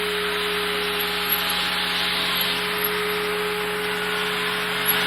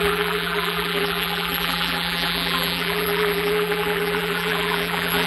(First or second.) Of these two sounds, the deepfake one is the second